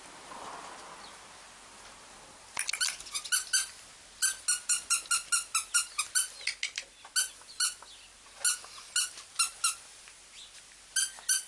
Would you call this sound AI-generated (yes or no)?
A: no